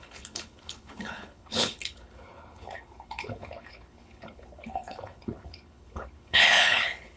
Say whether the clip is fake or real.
fake